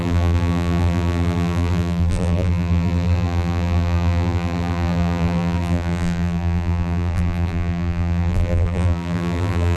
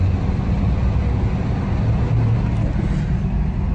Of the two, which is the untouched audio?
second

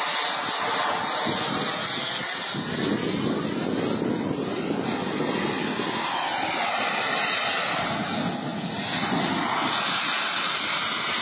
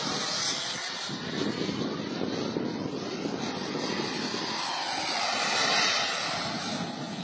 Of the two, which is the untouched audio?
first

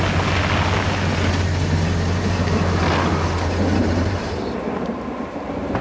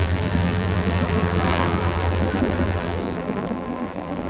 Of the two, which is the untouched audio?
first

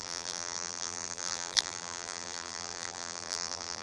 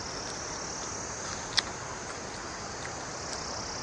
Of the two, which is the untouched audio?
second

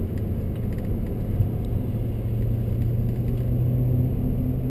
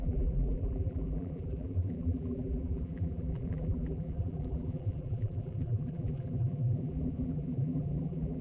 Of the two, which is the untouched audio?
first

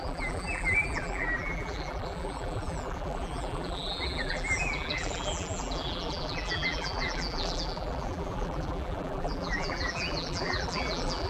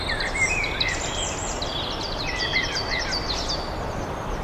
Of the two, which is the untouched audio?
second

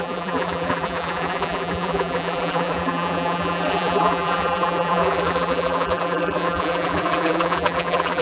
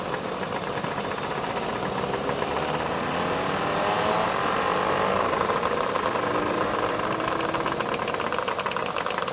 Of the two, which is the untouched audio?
second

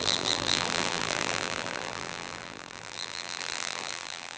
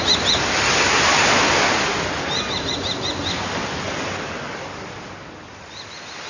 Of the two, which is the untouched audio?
second